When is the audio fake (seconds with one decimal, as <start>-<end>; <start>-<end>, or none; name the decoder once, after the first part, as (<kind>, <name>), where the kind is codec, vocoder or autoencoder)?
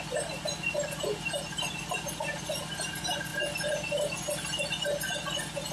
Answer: none